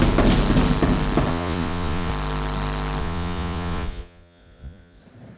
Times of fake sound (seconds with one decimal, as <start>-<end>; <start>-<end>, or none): 1.3-2.1; 3.0-5.0